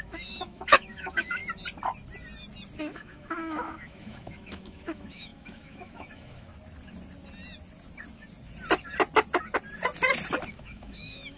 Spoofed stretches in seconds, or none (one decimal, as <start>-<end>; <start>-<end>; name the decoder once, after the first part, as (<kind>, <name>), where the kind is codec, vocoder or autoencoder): 0.0-1.4 (autoencoder, DAC-VAE); 2.8-6.5; 10.5-11.4